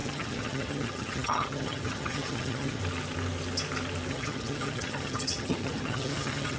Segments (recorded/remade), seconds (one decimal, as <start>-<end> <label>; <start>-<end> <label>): 0.0-2.8 remade; 2.8-4.1 recorded; 4.1-6.6 remade